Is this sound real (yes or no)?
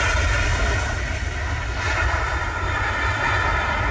yes